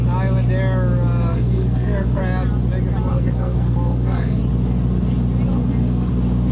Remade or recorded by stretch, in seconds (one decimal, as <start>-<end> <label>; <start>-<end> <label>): 0.0-1.3 recorded; 1.3-2.2 remade; 2.2-3.1 recorded; 3.1-4.4 remade; 4.4-5.5 recorded; 5.5-6.1 remade; 6.1-6.5 recorded